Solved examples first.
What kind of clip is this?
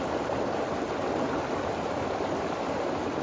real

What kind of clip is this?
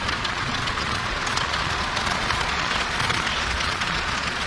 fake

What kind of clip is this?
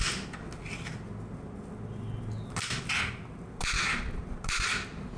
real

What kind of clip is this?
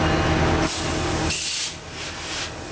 real